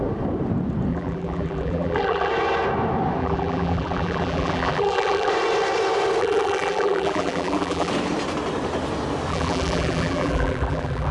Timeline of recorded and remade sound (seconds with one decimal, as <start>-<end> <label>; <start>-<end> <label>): 0.0-0.9 recorded; 0.9-2.3 remade; 2.3-3.2 recorded; 3.2-5.3 remade; 5.3-6.2 recorded; 6.2-7.9 remade; 7.9-9.3 recorded; 9.3-11.1 remade